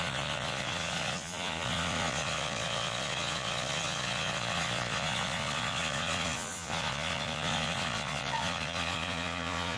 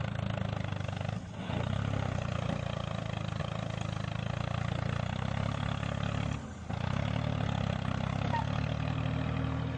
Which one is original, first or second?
second